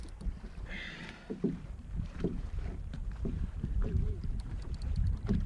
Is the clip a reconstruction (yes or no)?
yes